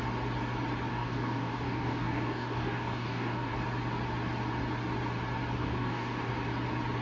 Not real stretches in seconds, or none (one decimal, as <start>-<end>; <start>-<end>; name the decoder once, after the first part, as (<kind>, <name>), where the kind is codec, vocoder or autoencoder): 0.9-3.5 (codec, DAC); 5.6-6.3